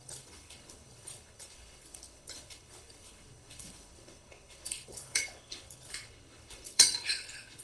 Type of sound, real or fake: fake